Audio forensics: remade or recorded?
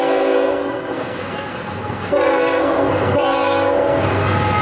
remade